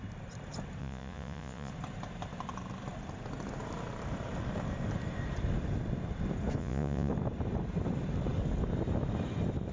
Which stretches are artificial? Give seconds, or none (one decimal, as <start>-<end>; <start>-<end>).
0.8-1.7; 6.6-7.1